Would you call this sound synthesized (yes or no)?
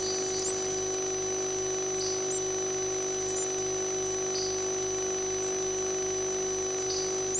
no